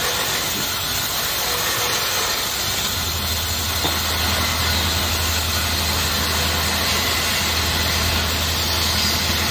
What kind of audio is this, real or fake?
real